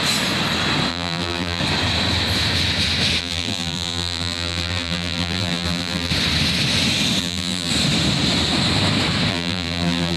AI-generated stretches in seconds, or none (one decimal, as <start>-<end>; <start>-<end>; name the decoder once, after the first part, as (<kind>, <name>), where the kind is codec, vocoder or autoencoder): 0.9-1.6 (vocoder, BigVGAN v2); 3.2-6.1; 7.2-7.7; 9.3-10.2